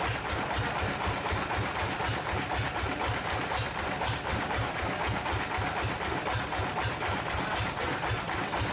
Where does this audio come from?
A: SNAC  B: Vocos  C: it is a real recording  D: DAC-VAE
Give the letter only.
C